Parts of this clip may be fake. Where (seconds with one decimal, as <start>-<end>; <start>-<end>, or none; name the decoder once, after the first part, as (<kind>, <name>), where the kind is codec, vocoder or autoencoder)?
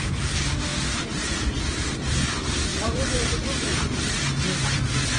2.7-4.3 (vocoder, BigVGAN v2)